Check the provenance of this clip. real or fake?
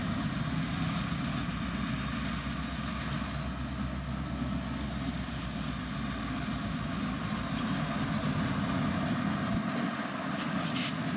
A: real